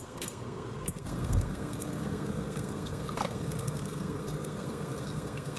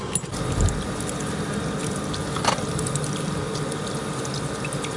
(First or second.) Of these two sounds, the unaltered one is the second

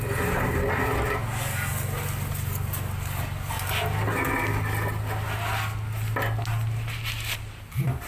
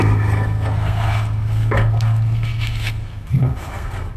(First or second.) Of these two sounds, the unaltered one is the first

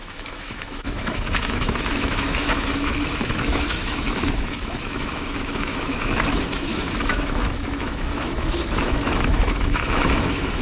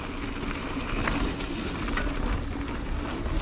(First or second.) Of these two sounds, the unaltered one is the second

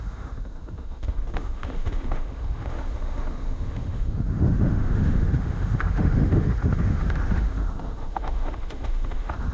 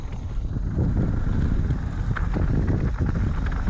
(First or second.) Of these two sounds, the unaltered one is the second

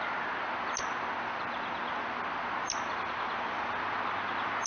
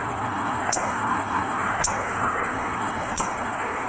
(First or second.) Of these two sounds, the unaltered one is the first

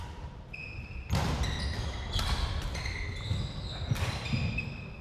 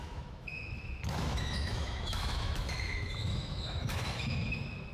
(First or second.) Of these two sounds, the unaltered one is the first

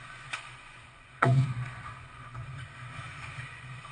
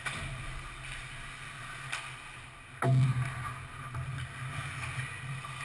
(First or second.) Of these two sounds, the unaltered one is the second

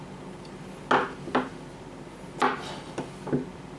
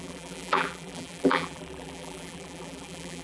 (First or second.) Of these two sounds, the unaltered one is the first